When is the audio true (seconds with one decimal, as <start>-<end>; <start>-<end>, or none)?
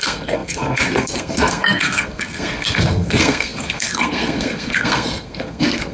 none